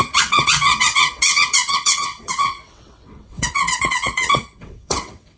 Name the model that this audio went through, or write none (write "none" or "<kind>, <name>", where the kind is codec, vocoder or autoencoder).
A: vocoder, WaveNeXt